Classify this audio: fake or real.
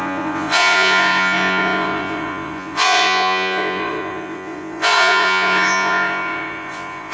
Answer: fake